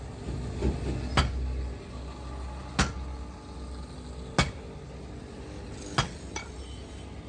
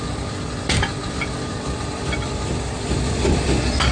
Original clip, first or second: first